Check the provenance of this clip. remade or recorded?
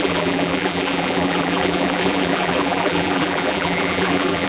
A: remade